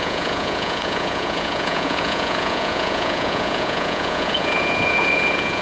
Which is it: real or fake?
fake